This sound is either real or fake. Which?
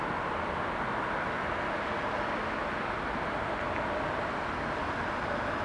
real